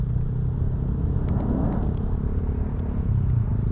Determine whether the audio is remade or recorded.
recorded